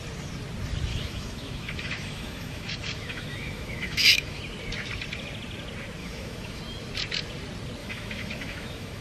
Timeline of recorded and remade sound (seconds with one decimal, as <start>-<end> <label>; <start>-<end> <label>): 0.0-0.9 recorded; 0.9-4.4 remade; 4.4-6.0 recorded; 6.0-6.6 remade; 6.6-7.8 recorded; 7.8-9.0 remade